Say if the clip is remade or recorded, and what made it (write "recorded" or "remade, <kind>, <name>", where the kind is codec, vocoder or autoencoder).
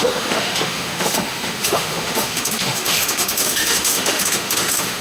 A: remade, autoencoder, DAC-VAE